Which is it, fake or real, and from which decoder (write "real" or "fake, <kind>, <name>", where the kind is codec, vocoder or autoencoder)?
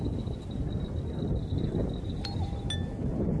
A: real